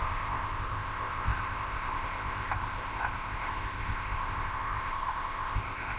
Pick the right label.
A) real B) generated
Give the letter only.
B